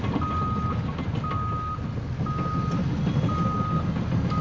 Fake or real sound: real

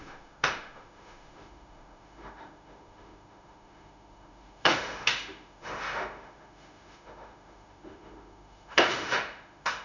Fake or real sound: fake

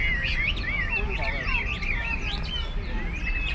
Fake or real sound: real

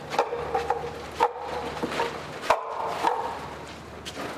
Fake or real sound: real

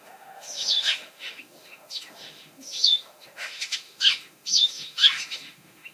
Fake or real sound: fake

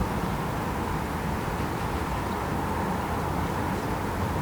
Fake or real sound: real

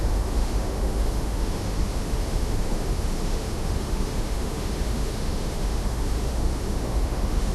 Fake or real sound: fake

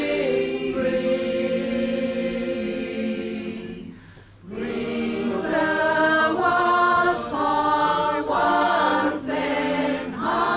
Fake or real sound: real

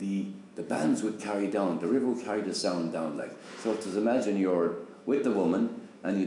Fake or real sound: fake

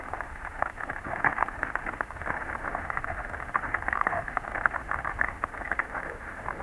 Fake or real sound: fake